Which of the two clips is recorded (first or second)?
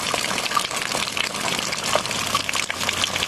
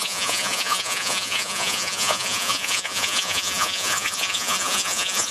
first